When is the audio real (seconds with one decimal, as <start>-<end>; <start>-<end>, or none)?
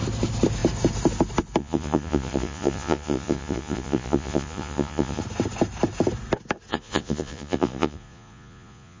0.0-1.6; 5.2-6.7